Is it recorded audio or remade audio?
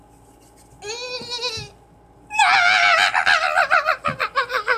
recorded